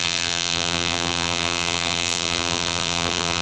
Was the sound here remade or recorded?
remade